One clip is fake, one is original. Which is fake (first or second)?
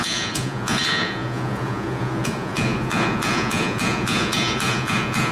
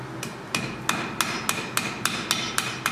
first